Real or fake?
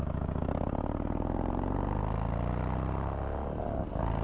real